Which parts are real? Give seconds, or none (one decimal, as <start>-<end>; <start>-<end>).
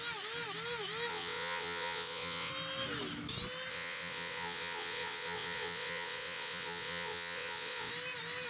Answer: 0.0-1.1; 2.5-3.7; 7.9-8.5